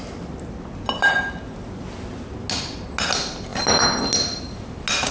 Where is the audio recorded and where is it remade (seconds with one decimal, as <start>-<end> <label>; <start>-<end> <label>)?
0.0-5.1 recorded